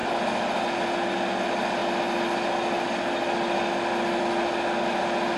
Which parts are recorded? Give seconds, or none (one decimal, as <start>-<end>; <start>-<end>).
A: 0.0-5.4